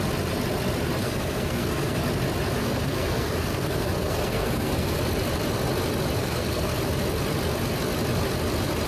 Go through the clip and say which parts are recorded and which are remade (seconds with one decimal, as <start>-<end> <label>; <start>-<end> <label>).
0.0-1.0 recorded; 1.0-2.0 remade; 2.0-2.6 recorded; 2.6-5.0 remade; 5.0-6.2 recorded; 6.2-6.8 remade; 6.8-8.9 recorded